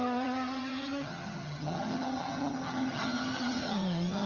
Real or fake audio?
fake